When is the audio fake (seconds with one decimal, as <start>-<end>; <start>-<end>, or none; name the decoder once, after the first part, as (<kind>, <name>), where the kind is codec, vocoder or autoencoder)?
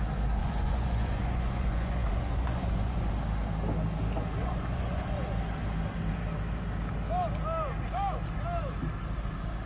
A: 0.4-3.1 (vocoder, Vocos); 4.4-5.3